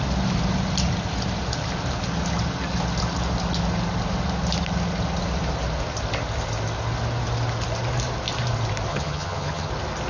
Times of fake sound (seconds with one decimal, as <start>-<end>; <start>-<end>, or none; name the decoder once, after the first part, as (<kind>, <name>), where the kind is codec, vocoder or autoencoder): 8.9-9.7 (vocoder, HiFi-GAN)